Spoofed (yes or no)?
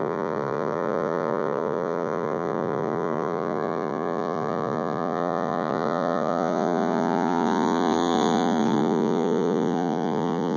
yes